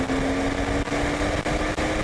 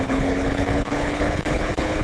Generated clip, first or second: second